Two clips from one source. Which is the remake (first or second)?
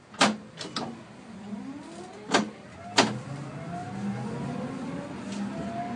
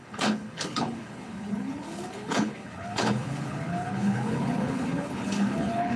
second